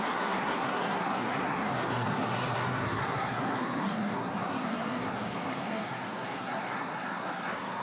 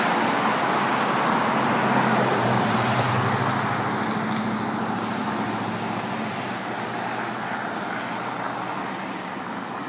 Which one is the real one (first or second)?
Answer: second